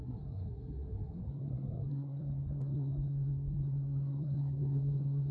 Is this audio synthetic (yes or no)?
yes